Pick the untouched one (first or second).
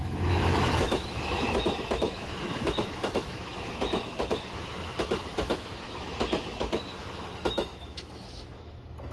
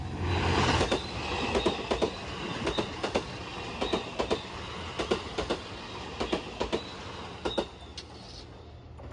second